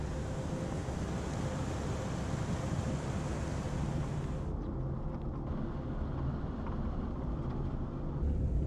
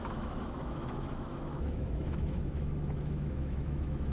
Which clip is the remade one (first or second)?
second